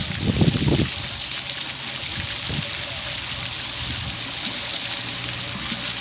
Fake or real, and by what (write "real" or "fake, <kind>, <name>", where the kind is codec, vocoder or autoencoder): real